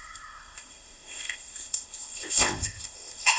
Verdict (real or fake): fake